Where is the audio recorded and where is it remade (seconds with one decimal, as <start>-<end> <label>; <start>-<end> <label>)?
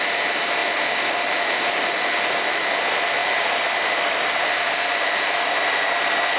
0.0-6.4 recorded